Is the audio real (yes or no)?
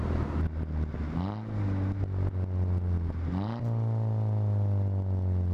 yes